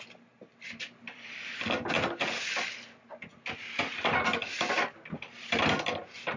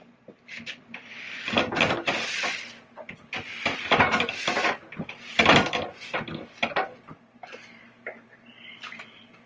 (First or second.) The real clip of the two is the first